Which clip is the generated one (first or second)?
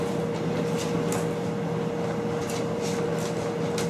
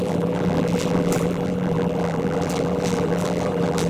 second